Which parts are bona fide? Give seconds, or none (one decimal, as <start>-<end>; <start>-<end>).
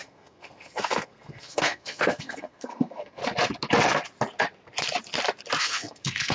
3.2-5.6